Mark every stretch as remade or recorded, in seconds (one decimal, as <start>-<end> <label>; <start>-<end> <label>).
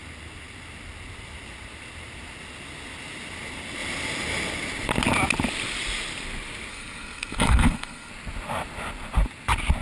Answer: 0.0-6.7 recorded; 6.7-8.1 remade; 8.1-9.8 recorded